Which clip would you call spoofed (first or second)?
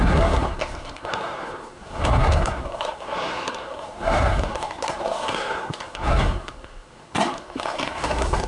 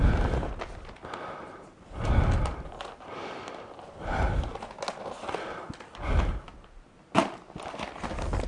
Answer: first